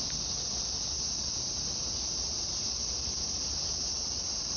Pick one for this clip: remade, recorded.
remade